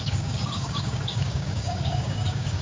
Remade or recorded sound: remade